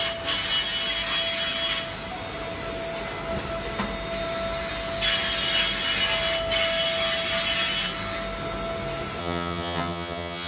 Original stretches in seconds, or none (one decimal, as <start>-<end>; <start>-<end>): 0.0-9.2